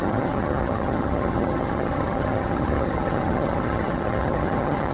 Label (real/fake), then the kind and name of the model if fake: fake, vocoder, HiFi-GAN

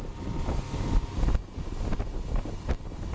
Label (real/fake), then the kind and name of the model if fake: real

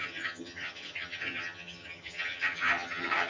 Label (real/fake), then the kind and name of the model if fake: fake, vocoder, HiFi-GAN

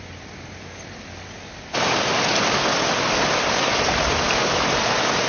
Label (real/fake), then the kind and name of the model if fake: real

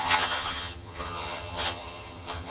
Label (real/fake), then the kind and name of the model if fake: fake, vocoder, HiFi-GAN